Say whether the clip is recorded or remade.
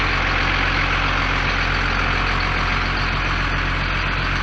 recorded